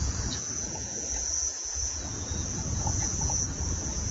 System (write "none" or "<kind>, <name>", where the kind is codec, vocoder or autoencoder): vocoder, Vocos